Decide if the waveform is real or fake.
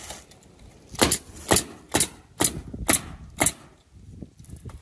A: real